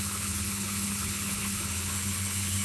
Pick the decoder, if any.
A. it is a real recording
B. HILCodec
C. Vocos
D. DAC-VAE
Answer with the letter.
B